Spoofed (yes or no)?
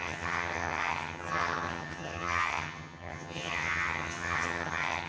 yes